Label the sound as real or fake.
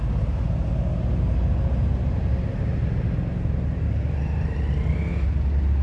real